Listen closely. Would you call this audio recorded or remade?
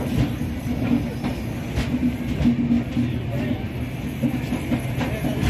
recorded